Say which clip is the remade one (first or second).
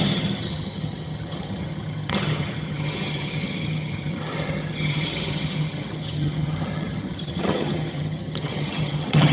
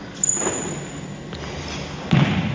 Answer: first